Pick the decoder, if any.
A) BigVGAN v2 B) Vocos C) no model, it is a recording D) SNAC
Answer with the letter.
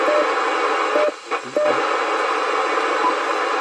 C